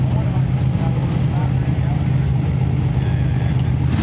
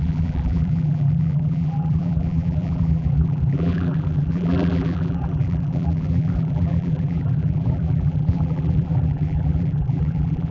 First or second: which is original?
first